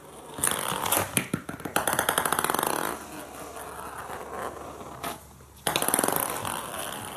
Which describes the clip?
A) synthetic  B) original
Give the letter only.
B